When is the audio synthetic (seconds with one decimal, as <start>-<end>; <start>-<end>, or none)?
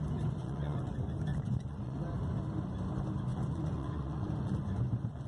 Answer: 0.4-0.9; 1.3-2.0; 3.3-5.3